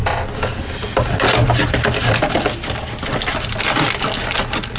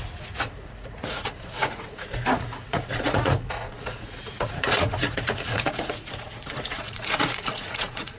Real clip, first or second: first